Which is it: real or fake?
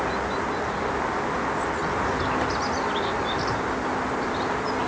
real